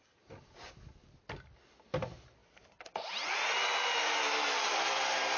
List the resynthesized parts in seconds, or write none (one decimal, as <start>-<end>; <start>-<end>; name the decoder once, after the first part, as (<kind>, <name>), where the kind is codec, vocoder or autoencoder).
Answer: 2.4-5.4 (vocoder, BigVGAN v2)